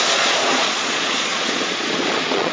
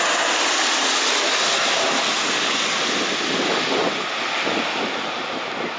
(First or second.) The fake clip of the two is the first